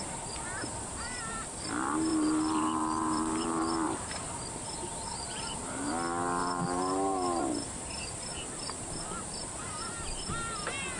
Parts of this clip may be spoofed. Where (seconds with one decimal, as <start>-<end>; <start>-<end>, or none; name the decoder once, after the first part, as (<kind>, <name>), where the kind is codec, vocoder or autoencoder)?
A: 0.6-1.4 (vocoder, BigVGAN v2); 2.1-5.9; 6.4-7.4; 8.3-9.8